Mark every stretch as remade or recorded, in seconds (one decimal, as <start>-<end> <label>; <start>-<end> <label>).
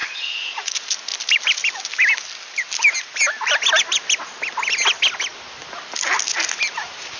0.0-0.7 remade; 0.7-7.2 recorded